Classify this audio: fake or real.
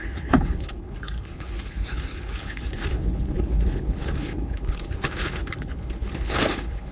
fake